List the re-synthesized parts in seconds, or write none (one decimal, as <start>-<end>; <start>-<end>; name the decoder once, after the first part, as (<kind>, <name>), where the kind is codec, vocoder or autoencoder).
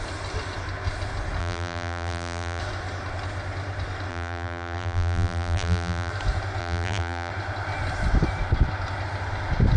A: 1.4-2.6 (vocoder, BigVGAN v2); 4.1-6.1; 6.6-7.3